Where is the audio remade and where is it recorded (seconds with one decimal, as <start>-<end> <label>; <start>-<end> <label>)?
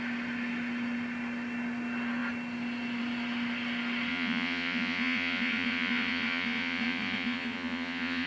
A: 0.0-4.1 recorded; 4.1-8.3 remade